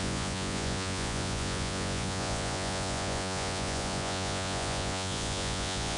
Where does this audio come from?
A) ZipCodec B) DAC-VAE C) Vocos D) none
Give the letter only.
C